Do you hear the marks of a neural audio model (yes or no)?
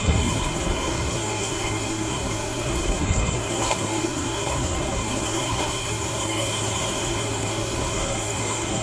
yes